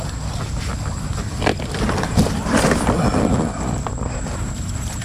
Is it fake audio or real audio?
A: real